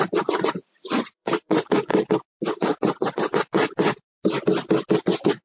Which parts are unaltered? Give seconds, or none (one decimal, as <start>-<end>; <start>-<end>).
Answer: 1.9-5.0